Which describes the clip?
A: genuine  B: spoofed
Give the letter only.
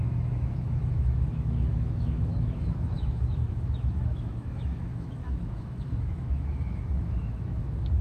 B